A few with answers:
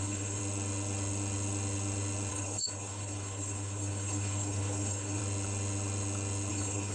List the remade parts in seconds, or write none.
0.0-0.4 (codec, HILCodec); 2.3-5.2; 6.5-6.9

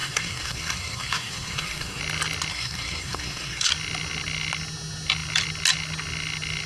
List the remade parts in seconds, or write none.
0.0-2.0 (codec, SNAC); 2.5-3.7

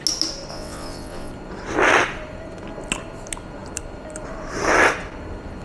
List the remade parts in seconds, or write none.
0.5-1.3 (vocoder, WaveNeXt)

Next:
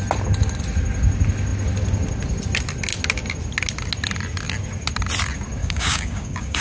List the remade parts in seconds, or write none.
5.6-6.6 (codec, DAC)